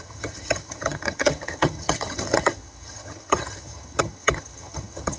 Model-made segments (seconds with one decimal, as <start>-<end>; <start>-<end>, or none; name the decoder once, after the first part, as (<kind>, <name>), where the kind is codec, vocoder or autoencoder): 0.0-5.2 (vocoder, HiFi-GAN)

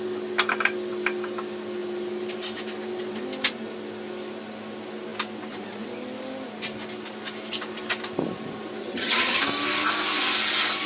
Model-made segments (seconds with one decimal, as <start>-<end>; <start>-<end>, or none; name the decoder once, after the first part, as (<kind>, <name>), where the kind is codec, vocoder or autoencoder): 8.8-9.4 (vocoder, HiFi-GAN)

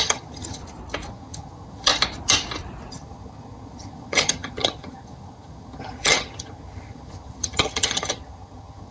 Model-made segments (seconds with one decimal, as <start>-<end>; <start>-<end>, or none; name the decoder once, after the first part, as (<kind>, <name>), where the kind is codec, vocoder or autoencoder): 0.0-0.6 (vocoder, HiFi-GAN); 1.1-1.9; 2.9-8.9

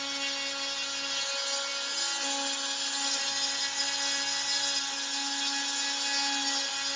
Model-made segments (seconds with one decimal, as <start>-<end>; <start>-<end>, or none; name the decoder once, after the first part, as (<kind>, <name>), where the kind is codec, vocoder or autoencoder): none